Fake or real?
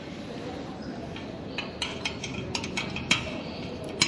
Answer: fake